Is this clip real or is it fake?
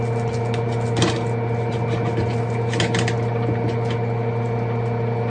real